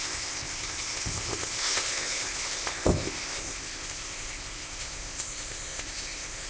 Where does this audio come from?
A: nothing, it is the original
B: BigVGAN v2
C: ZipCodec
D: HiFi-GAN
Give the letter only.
C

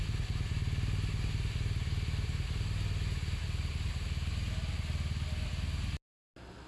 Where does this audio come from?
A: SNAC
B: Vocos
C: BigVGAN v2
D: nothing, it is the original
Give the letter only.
D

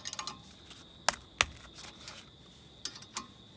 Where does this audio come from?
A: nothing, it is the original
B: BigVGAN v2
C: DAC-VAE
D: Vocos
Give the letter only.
A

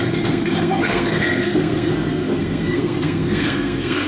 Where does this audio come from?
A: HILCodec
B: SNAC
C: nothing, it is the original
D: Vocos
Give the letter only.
B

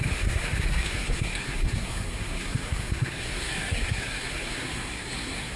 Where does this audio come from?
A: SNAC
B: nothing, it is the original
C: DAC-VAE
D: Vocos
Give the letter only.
A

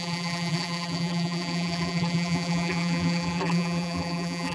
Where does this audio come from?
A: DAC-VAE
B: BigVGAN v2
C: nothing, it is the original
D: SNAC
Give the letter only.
B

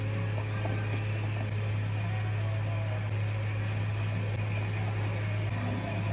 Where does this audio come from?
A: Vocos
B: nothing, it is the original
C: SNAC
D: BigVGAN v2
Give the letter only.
B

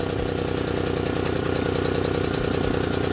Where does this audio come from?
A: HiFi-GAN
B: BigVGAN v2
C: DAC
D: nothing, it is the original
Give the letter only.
D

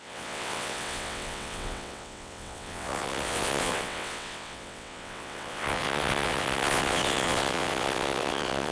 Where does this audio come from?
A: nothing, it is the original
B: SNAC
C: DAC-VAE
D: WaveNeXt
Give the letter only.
D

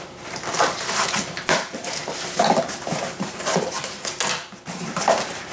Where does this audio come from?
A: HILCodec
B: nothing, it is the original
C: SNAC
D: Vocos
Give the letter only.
B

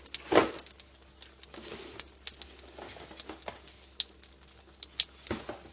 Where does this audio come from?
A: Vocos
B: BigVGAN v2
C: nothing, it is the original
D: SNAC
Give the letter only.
C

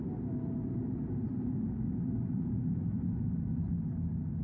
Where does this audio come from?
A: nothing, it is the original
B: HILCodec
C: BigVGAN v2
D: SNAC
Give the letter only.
A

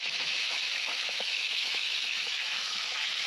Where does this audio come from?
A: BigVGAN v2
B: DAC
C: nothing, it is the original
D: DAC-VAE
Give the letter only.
D